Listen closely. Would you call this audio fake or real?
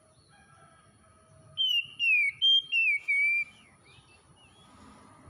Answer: real